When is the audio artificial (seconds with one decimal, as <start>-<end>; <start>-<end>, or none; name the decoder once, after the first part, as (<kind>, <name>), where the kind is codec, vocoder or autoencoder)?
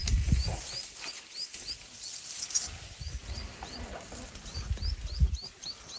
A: none